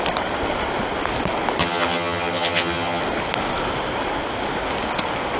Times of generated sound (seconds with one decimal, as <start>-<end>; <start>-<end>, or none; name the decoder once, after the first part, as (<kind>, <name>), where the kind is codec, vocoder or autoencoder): 1.6-3.0 (vocoder, HiFi-GAN)